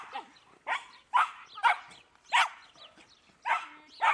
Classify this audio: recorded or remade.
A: recorded